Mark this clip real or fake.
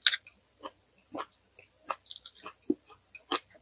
real